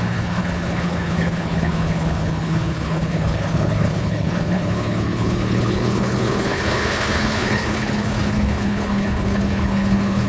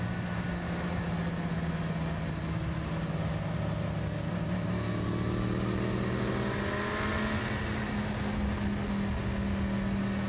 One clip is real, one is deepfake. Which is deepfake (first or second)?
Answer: first